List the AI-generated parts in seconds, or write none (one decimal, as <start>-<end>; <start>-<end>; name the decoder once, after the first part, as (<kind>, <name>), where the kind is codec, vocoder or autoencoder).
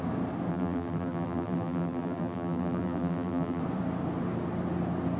0.5-3.6 (vocoder, BigVGAN v2)